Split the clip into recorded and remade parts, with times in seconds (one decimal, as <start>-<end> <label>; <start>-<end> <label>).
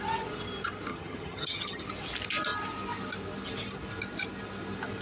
0.0-0.9 recorded; 0.9-1.8 remade; 1.8-5.0 recorded